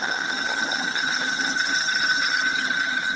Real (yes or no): no